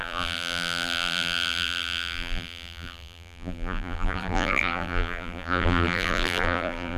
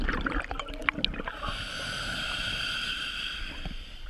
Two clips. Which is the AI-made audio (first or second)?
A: first